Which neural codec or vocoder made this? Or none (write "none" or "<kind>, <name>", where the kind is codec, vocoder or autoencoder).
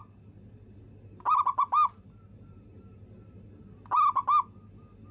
none